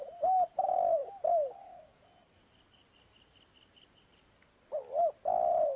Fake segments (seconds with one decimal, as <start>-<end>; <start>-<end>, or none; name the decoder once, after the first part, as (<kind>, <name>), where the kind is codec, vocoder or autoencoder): none